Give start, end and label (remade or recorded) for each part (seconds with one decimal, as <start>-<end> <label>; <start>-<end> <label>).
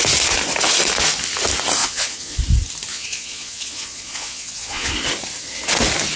0.0-1.8 recorded; 1.8-2.4 remade; 2.4-2.9 recorded; 2.9-4.9 remade; 4.9-6.2 recorded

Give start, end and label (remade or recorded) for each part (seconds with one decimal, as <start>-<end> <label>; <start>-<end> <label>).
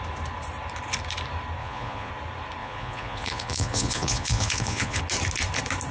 0.0-1.6 recorded; 1.6-2.1 remade; 2.1-2.6 recorded; 2.6-5.0 remade; 5.0-5.9 recorded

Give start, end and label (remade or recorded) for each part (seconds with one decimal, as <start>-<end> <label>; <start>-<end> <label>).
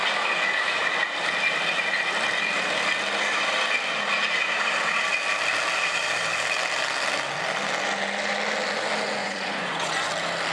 0.0-9.2 recorded; 9.2-10.1 remade; 10.1-10.5 recorded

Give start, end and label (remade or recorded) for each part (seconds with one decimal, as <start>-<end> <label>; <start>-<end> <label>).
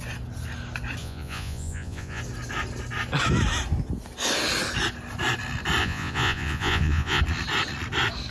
0.0-1.0 recorded; 1.0-2.2 remade; 2.2-5.8 recorded; 5.8-7.2 remade; 7.2-8.3 recorded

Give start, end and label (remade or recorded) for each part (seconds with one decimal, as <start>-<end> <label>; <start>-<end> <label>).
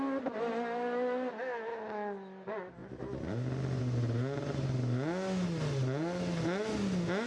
0.0-7.3 recorded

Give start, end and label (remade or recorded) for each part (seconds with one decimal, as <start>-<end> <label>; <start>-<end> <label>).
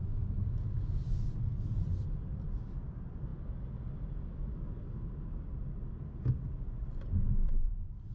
0.0-8.1 recorded